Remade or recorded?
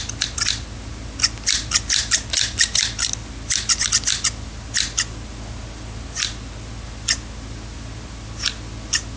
recorded